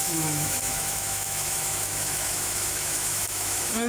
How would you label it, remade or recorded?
remade